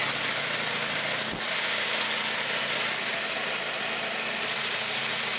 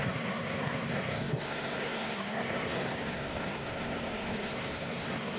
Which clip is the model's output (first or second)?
second